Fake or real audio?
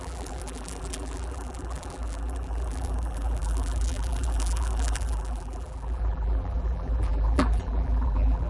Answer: fake